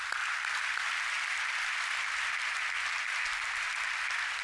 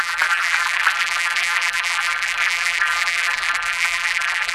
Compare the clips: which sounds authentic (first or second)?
first